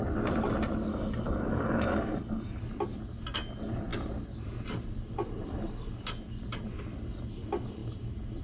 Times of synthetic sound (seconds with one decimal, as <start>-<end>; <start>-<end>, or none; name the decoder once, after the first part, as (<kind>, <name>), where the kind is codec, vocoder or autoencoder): 0.9-2.6 (codec, DAC)